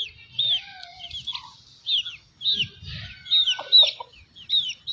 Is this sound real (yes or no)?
yes